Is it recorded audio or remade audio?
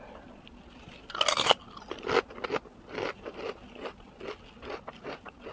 recorded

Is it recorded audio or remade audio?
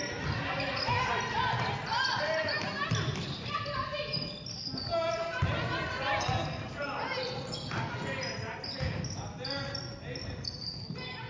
recorded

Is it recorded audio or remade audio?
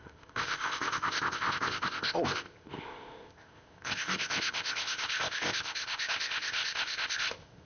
remade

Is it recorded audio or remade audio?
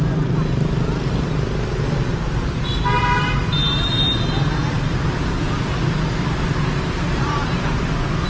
recorded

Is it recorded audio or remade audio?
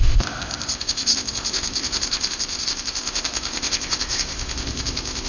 remade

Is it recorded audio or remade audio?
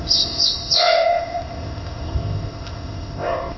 remade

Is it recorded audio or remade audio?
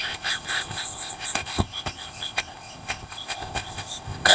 remade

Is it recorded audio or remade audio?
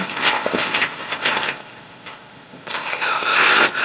remade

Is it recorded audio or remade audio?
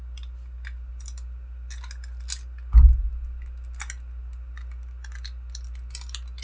recorded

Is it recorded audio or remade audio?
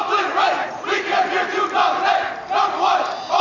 recorded